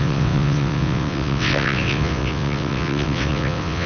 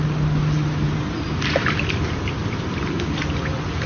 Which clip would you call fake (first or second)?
first